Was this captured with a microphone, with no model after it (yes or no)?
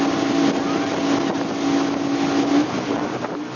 yes